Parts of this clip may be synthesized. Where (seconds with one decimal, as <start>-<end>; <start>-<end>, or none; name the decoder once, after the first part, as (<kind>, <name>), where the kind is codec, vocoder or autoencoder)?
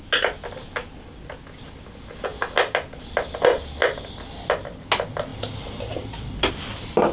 none